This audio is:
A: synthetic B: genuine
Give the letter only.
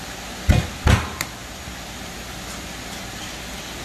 B